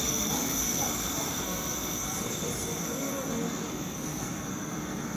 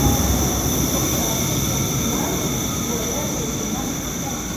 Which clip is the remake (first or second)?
first